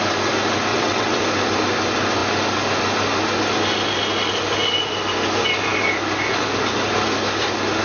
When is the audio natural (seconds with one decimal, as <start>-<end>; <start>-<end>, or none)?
0.0-0.7; 1.2-7.8